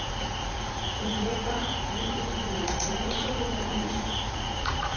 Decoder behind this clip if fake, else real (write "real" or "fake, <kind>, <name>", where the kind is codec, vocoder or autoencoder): fake, vocoder, Vocos